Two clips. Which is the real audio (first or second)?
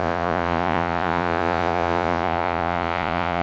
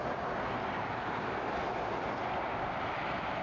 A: second